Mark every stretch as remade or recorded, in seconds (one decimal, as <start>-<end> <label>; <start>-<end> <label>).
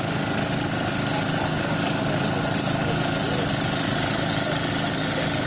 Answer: 0.0-5.5 recorded